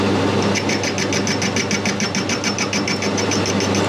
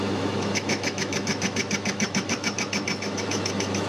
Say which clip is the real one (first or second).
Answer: first